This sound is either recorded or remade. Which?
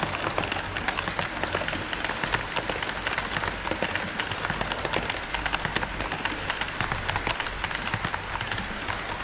recorded